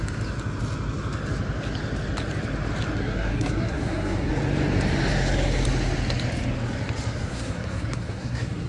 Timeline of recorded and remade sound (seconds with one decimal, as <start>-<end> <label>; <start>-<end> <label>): 0.0-3.0 recorded; 3.0-4.3 remade; 4.3-7.3 recorded; 7.3-8.7 remade